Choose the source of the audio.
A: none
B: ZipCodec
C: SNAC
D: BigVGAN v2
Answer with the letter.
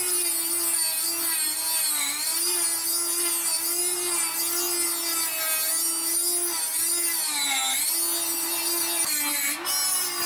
A